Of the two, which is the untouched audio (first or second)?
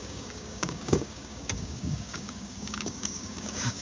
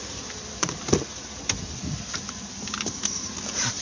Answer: second